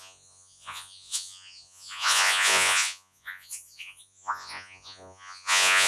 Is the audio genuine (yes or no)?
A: no